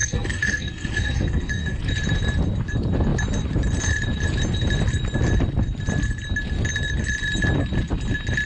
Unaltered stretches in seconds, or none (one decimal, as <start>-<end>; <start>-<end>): 1.8-8.5

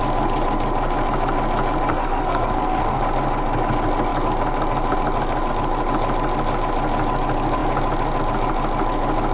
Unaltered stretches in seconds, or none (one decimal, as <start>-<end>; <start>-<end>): 0.0-1.9; 3.0-9.3